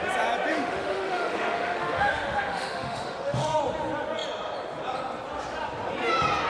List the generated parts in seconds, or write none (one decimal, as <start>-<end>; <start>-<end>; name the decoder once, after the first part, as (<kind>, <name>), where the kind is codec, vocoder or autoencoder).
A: 0.5-3.6 (autoencoder, DAC-VAE)